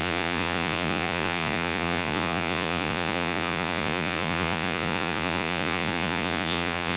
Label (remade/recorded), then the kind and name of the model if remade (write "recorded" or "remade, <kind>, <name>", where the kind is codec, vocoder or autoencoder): remade, vocoder, Vocos